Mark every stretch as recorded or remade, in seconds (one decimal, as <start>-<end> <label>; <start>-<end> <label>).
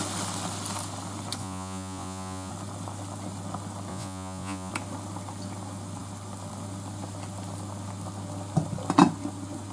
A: 0.0-1.4 recorded; 1.4-2.5 remade; 2.5-3.9 recorded; 3.9-4.7 remade; 4.7-9.7 recorded